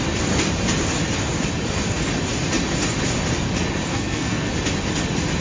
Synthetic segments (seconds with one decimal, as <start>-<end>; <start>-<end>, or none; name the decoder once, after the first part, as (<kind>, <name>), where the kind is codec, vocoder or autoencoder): 3.9-4.5 (codec, SNAC)